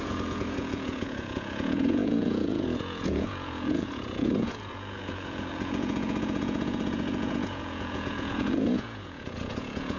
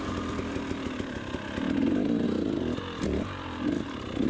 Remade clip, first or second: first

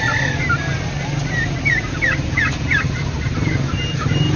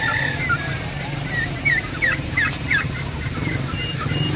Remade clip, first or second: second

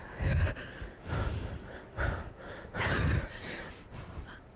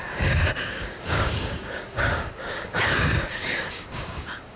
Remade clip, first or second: second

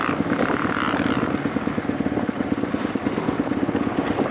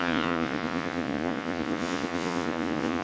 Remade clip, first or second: second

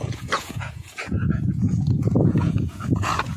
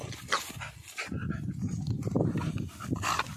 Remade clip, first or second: first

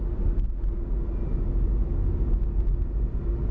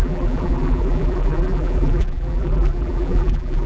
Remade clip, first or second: second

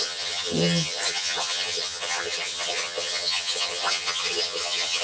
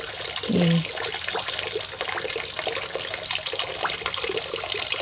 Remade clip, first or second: first